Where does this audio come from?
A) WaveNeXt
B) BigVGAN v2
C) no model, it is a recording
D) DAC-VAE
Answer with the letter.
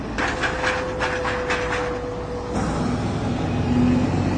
C